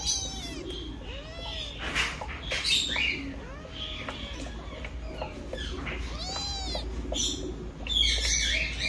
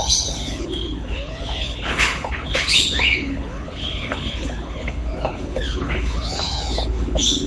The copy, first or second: second